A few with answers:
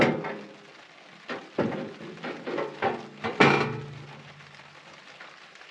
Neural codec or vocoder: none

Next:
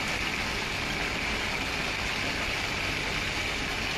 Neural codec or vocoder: none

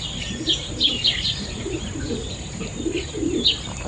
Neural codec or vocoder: none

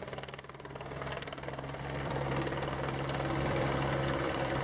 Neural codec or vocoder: vocoder, BigVGAN v2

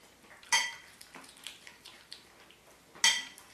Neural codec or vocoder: none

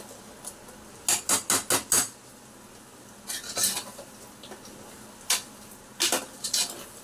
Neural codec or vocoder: none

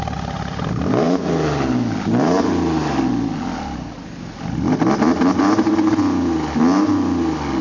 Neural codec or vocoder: none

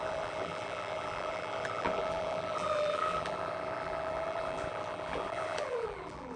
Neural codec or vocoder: vocoder, BigVGAN v2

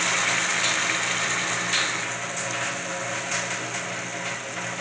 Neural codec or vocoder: none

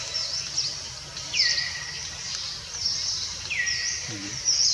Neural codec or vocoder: none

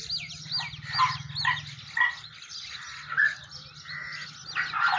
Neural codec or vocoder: none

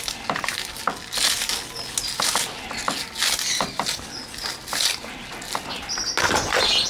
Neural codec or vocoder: none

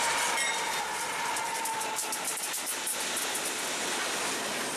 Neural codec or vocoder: none